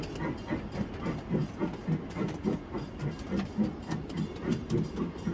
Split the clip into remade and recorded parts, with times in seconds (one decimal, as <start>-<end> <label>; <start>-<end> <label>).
0.0-5.3 recorded